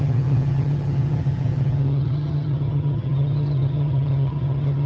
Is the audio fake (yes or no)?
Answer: yes